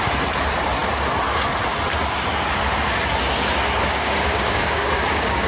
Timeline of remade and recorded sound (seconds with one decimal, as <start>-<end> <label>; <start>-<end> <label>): 0.0-3.9 recorded; 3.9-5.5 remade